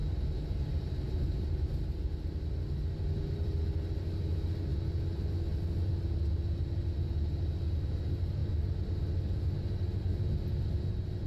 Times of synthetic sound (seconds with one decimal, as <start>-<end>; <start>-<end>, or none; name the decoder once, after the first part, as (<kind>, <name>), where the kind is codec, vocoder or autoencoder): 0.0-3.6 (vocoder, BigVGAN v2)